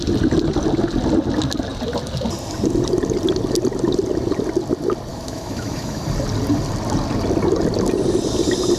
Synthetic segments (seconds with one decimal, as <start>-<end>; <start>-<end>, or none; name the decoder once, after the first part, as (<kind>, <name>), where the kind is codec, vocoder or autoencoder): 5.1-6.0 (autoencoder, DAC-VAE)